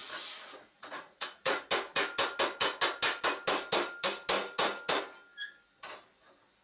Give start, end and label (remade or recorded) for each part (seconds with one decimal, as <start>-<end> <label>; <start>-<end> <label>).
0.0-1.6 remade; 1.6-6.6 recorded